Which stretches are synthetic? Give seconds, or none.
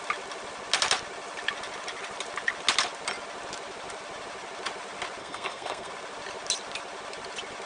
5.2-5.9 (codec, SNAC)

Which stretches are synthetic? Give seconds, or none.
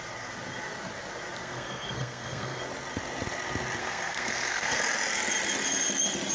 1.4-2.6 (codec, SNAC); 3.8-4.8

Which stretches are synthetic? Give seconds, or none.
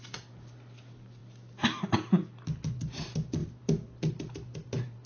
none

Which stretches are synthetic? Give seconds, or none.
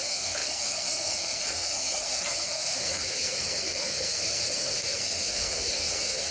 0.0-6.3 (codec, SNAC)